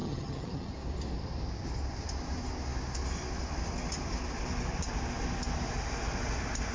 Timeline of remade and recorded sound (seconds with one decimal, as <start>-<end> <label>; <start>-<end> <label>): 0.0-0.7 remade; 0.7-6.7 recorded